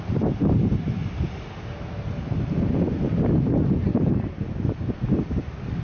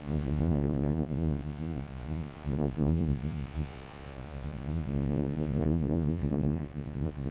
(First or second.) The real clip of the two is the first